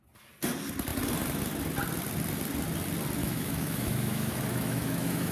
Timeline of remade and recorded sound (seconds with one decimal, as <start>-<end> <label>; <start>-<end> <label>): 0.0-3.2 recorded; 3.2-5.3 remade